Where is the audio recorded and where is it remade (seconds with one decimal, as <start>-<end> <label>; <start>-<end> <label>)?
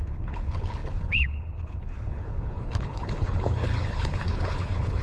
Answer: 0.0-5.0 remade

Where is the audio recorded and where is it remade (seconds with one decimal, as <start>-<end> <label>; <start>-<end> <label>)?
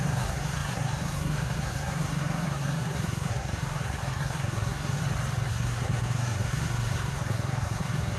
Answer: 0.0-5.0 remade; 5.0-5.5 recorded; 5.5-8.2 remade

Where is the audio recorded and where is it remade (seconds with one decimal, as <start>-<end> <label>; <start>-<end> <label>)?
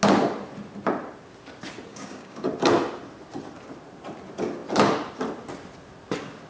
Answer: 0.0-1.9 recorded; 1.9-2.5 remade; 2.5-6.5 recorded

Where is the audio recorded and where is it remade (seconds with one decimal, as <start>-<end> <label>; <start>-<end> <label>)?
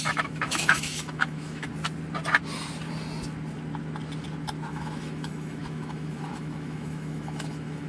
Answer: 0.0-1.7 remade; 1.7-4.7 recorded; 4.7-7.9 remade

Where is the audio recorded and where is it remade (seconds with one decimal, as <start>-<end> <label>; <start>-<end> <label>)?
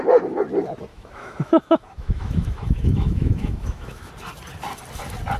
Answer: 0.0-0.9 recorded; 0.9-4.1 remade; 4.1-5.4 recorded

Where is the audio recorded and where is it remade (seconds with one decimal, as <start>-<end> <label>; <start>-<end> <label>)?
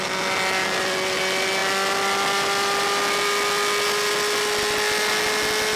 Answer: 0.0-5.8 recorded